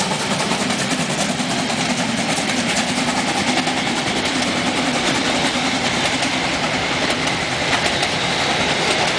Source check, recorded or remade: remade